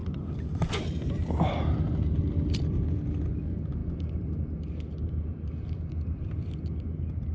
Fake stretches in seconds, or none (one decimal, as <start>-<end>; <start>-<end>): none